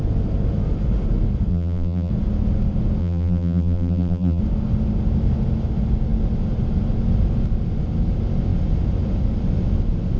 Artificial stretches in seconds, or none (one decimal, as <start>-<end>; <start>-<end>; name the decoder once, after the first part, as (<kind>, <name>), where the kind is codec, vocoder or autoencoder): 1.5-2.1 (vocoder, BigVGAN v2); 3.0-4.4

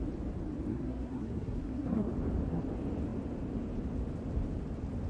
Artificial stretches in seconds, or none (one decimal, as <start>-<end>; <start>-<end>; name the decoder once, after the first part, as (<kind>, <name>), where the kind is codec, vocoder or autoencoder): 0.7-2.1 (codec, SNAC)

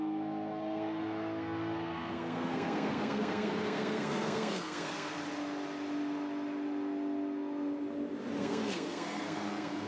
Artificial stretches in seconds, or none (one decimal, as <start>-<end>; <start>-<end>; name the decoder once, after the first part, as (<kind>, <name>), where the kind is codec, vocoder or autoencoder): 0.0-5.1 (codec, SNAC); 8.4-9.9

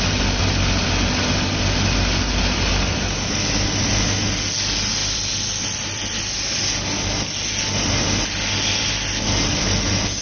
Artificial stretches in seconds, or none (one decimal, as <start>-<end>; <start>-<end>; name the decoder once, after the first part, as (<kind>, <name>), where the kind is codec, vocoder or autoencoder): 5.0-6.1 (vocoder, BigVGAN v2)